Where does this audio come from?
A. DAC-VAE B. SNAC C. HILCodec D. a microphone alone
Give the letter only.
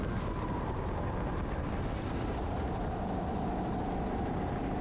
D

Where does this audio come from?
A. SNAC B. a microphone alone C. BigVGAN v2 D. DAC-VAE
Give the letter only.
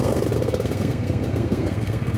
A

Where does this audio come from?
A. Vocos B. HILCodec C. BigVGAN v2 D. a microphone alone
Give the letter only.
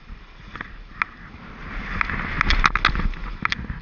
D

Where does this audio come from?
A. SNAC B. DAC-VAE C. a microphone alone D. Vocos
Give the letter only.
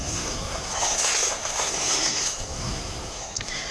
A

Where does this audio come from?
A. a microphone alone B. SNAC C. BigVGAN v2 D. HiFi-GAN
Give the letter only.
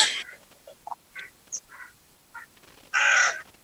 C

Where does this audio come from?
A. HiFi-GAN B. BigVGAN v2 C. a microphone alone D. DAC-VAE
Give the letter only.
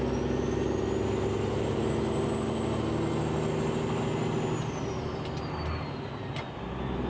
C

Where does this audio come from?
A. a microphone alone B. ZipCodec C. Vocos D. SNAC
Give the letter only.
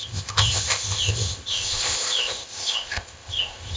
B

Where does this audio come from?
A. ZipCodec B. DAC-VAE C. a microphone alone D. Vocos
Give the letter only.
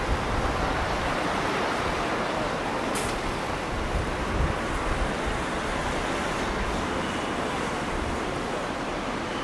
C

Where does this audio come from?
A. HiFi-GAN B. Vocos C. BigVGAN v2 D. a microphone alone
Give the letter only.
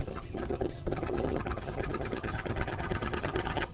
A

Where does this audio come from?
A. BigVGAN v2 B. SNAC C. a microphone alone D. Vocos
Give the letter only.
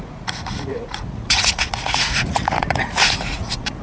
D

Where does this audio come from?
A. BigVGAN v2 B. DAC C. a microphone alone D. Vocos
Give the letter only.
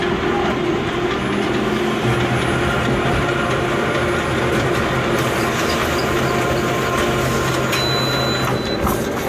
C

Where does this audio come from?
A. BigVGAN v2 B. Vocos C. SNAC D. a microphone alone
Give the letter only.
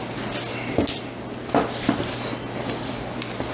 D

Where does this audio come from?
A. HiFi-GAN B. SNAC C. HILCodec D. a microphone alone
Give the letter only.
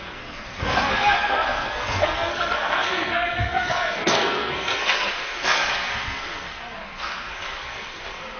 B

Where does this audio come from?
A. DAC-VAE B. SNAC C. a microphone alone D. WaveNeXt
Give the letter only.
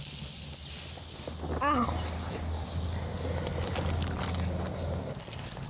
C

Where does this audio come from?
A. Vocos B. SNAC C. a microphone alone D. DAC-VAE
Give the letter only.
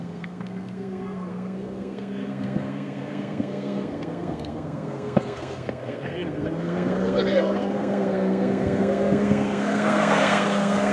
B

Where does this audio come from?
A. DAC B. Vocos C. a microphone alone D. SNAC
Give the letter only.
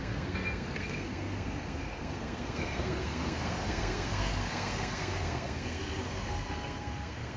D